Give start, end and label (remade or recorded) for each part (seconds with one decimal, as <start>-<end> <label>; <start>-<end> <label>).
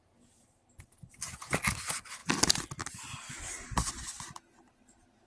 0.0-5.3 recorded